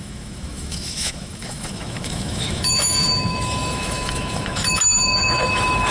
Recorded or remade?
remade